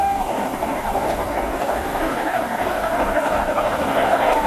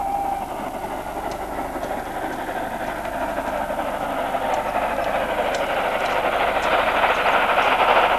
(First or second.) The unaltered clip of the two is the second